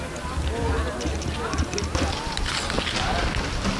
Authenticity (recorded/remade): recorded